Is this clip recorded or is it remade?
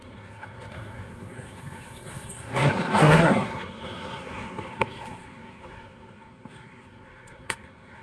remade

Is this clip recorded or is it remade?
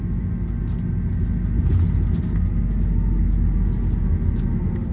recorded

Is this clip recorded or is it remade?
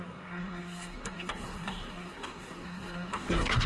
remade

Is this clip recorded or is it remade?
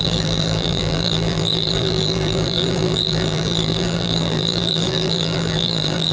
remade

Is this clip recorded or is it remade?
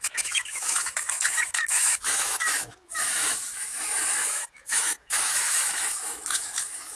remade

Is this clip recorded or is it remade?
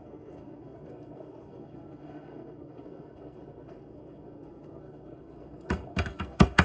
remade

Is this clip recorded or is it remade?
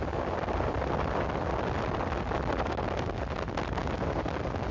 recorded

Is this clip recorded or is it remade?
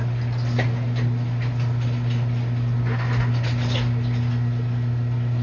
recorded